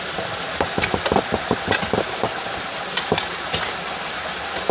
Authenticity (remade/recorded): recorded